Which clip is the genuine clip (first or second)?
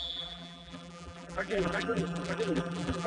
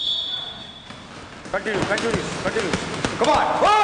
second